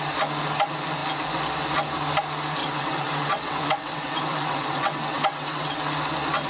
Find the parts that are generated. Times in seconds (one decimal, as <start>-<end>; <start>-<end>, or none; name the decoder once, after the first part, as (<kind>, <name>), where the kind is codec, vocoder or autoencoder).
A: 2.6-5.8 (vocoder, WaveNeXt)